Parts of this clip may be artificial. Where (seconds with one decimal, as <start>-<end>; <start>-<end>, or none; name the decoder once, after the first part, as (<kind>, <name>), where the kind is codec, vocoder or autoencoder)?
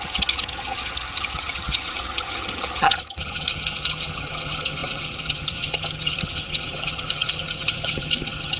0.0-8.6 (vocoder, HiFi-GAN)